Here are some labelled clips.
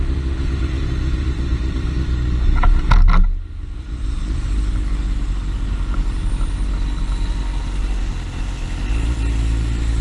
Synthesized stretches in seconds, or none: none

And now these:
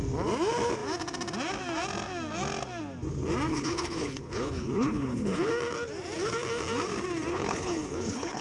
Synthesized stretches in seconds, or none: 3.5-5.5 (codec, HILCodec); 7.3-8.4